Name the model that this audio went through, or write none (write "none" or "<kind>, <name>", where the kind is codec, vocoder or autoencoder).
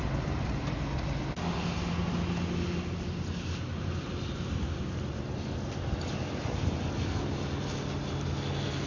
none